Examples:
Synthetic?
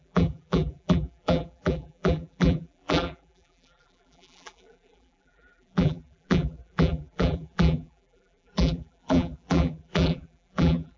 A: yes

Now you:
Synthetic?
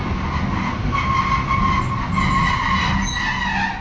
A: no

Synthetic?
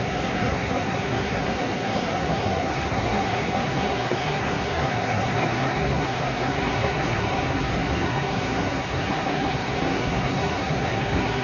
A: yes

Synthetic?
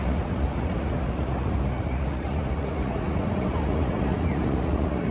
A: yes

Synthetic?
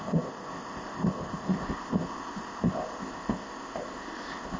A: yes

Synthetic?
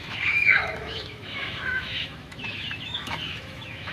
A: yes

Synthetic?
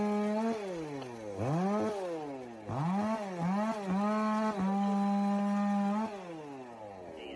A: no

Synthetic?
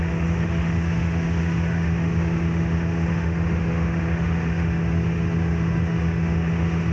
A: yes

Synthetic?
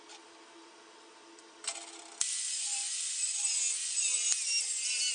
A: no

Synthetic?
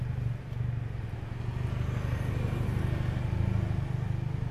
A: no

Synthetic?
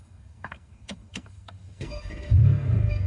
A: yes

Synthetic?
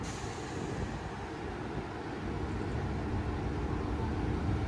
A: no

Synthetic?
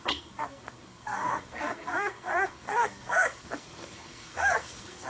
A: yes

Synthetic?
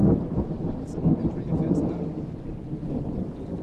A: no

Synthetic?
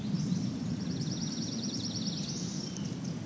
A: no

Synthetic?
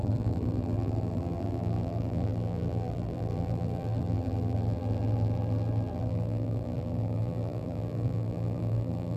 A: yes